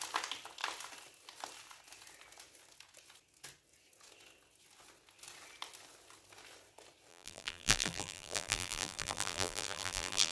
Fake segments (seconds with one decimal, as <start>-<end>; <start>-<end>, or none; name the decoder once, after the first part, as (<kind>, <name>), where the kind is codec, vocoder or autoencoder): 7.1-10.3 (vocoder, BigVGAN v2)